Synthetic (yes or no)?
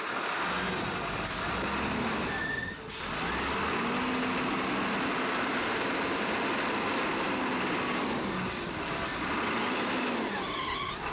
no